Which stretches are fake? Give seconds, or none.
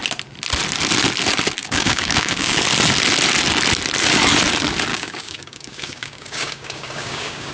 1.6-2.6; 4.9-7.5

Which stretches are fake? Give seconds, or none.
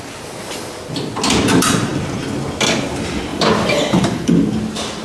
3.3-4.4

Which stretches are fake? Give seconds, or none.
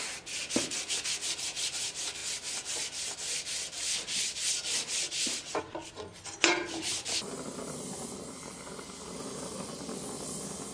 none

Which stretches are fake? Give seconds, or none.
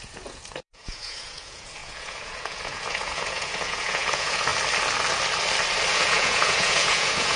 0.0-4.5; 5.9-7.4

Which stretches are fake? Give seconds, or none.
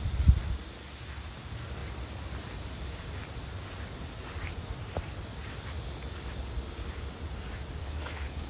7.8-8.5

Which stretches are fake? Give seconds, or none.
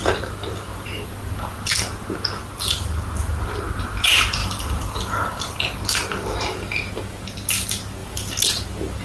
0.7-1.6; 4.4-5.8; 8.0-8.5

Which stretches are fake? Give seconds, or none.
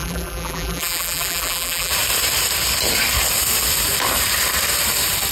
0.0-1.9